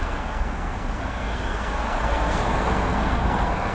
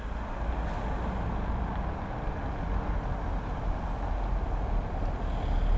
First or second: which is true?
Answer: second